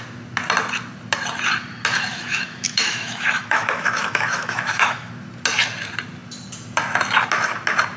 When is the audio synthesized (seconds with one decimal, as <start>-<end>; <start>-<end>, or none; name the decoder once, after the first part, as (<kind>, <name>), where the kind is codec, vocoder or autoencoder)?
2.1-5.1 (autoencoder, DAC-VAE)